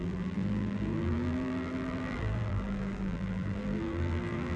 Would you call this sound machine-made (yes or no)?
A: yes